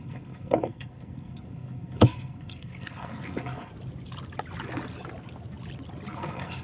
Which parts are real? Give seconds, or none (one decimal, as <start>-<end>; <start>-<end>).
3.7-6.1